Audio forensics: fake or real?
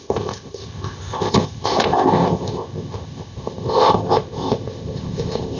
fake